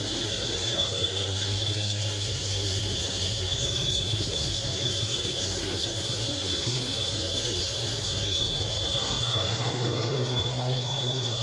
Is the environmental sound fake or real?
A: fake